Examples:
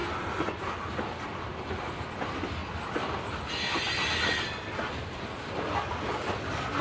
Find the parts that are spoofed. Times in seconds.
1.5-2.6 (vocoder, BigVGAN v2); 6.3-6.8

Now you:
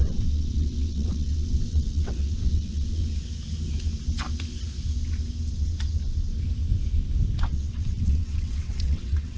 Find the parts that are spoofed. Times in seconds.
0.0-3.0 (vocoder, WaveNeXt); 7.4-9.4

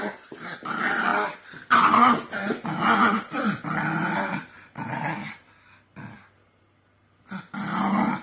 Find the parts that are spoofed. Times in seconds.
none

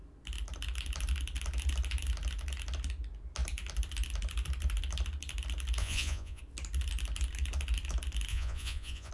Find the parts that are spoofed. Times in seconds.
5.8-6.4 (vocoder, Vocos); 8.3-9.1

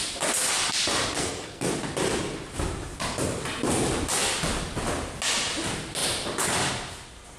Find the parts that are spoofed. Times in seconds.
1.2-1.7 (codec, SNAC)

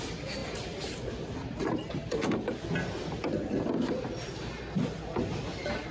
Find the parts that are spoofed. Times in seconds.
none